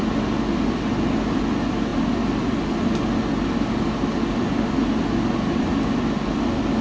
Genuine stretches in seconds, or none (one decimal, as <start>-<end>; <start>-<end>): 0.0-6.8